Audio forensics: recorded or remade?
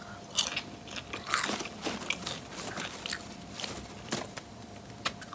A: recorded